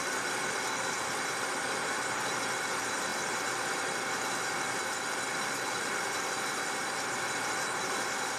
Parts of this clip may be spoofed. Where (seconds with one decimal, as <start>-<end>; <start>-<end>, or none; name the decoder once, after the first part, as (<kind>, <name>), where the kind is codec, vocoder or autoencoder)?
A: 0.0-8.4 (vocoder, BigVGAN v2)